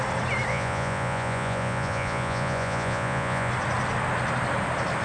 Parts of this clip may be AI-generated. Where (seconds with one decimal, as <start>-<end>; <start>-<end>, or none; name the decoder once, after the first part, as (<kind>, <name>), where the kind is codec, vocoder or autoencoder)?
0.5-3.5 (vocoder, Vocos)